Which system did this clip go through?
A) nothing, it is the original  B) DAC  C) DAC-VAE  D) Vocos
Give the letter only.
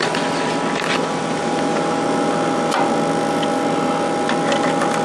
A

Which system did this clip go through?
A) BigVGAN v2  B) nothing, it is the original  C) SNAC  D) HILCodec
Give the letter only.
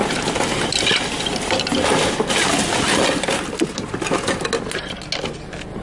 B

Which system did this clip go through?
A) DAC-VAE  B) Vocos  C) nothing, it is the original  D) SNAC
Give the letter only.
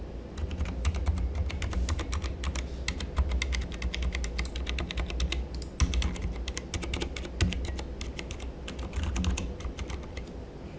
C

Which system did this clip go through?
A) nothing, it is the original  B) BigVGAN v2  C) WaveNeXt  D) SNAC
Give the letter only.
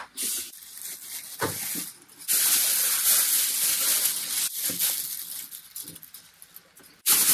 A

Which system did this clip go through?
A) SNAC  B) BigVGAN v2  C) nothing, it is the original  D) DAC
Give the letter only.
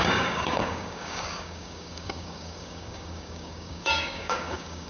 D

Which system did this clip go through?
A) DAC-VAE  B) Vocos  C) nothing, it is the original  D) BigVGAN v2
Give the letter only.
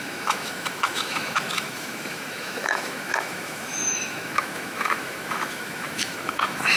A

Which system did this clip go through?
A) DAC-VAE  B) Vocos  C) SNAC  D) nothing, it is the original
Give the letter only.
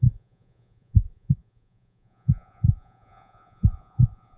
B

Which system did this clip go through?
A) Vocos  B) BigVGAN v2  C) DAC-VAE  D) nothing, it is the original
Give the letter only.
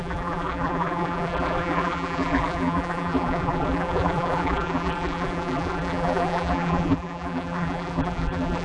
B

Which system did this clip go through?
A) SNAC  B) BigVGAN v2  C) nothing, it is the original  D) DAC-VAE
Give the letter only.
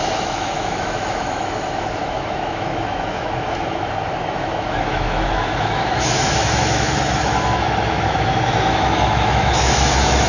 D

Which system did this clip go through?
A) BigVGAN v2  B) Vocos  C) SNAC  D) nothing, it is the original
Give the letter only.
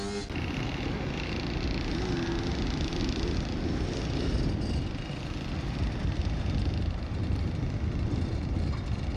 D